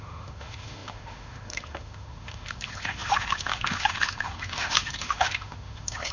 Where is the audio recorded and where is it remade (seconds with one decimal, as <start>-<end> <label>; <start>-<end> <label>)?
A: 0.0-6.1 remade